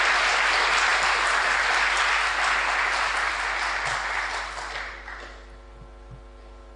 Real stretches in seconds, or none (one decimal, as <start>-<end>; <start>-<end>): 0.0-6.8